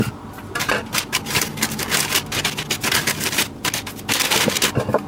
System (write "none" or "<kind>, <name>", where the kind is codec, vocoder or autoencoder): none